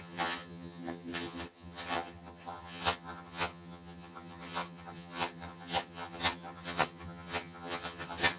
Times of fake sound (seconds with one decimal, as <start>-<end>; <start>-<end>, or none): 0.0-8.4